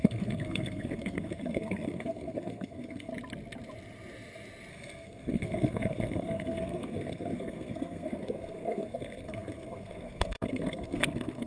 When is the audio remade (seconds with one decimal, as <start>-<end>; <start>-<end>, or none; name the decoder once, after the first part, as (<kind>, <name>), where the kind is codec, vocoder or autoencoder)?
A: 0.0-3.1 (codec, SNAC); 4.7-11.5